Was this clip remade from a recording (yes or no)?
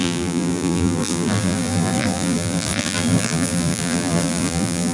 yes